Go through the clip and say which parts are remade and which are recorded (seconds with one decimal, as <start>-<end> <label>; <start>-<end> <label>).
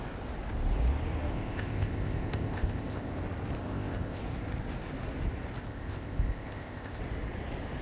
0.0-1.3 recorded; 1.3-3.2 remade; 3.2-3.6 recorded; 3.6-4.2 remade; 4.2-5.6 recorded; 5.6-7.0 remade; 7.0-7.8 recorded